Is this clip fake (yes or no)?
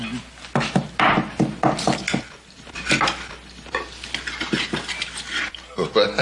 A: no